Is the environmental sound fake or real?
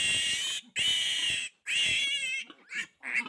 real